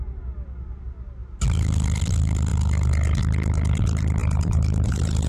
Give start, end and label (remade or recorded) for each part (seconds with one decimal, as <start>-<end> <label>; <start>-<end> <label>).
0.0-4.2 recorded; 4.2-5.3 remade